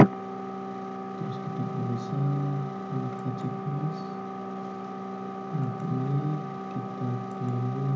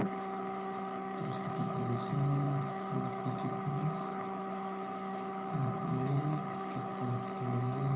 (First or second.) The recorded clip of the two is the first